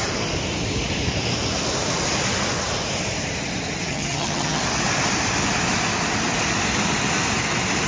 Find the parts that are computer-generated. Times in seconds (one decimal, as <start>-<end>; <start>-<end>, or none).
3.9-4.6